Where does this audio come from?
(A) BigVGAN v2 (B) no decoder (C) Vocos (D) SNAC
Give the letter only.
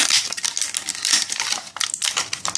B